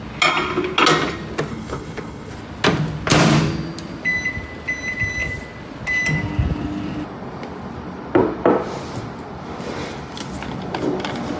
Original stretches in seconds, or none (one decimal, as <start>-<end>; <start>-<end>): 0.0-1.5; 2.3-11.4